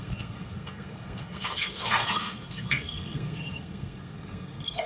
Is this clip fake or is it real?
fake